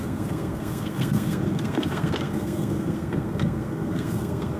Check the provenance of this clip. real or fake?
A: fake